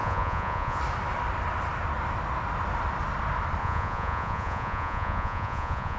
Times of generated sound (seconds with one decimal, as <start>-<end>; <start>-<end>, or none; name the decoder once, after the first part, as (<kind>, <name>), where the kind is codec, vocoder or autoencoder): 0.0-0.8 (vocoder, Vocos); 3.6-6.0